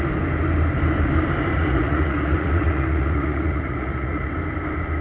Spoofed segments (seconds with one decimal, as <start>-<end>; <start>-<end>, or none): 1.5-4.3